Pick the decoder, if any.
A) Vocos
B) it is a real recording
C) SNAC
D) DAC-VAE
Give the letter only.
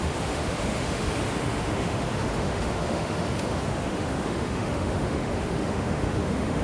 D